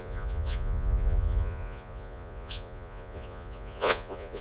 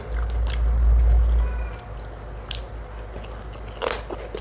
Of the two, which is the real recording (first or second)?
second